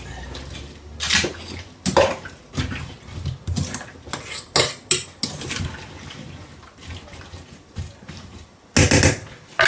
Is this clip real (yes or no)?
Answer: yes